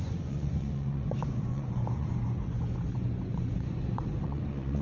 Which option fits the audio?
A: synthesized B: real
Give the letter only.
A